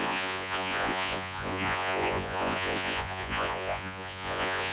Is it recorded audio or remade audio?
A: remade